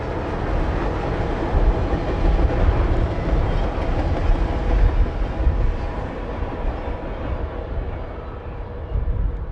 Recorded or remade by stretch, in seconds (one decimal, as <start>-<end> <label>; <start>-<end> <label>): 0.0-9.5 recorded